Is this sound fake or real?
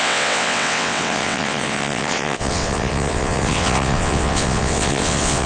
fake